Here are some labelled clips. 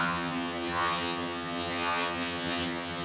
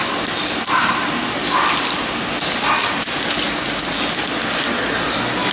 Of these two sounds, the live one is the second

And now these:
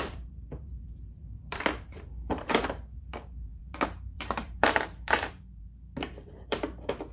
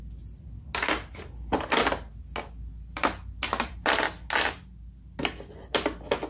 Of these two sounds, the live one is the second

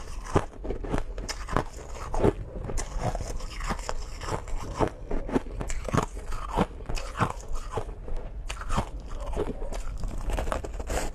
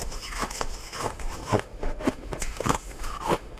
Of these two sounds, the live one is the first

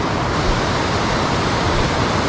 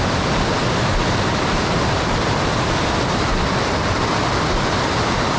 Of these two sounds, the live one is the second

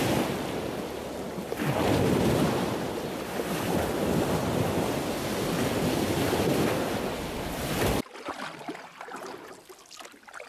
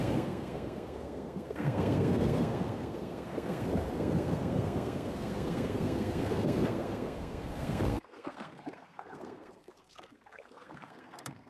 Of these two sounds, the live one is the first